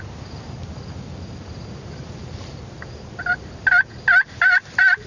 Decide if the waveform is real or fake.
real